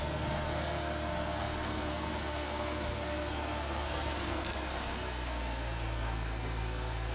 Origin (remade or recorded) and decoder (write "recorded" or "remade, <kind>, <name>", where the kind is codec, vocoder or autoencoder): remade, codec, SNAC